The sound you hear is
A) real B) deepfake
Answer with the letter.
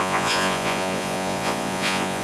B